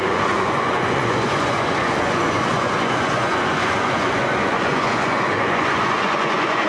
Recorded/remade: remade